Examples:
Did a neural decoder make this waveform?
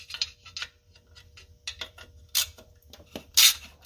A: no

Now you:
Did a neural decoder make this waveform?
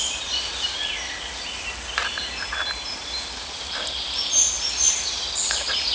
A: no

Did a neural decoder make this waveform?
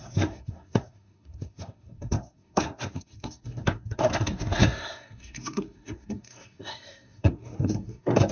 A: yes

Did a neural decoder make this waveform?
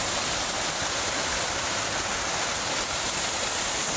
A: no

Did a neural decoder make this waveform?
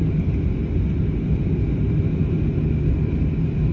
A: no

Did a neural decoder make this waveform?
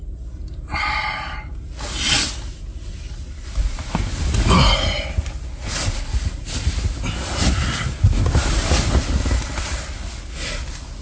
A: no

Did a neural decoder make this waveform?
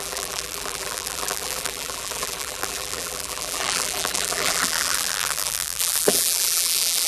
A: yes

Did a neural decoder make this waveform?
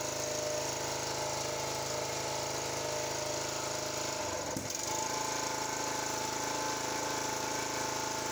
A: no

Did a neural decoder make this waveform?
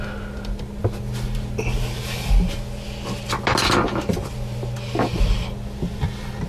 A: no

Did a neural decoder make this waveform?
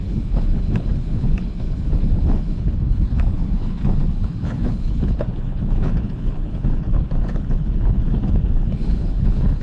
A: yes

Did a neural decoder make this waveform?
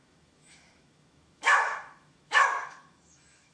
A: yes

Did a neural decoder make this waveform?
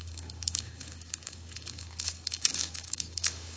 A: yes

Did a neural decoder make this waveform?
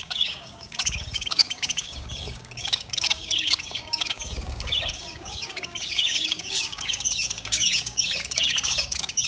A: yes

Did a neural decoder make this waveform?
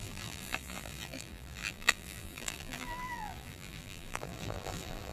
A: yes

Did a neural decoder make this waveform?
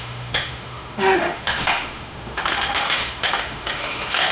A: yes